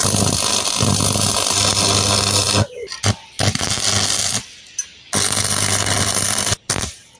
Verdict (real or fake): real